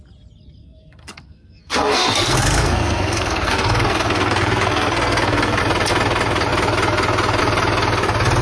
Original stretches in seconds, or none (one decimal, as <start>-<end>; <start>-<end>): 0.0-0.6; 5.6-8.4